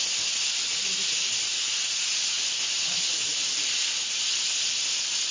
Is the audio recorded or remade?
recorded